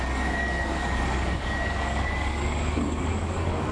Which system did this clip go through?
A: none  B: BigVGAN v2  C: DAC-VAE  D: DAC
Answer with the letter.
D